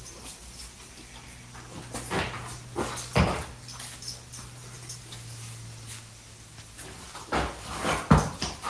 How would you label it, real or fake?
real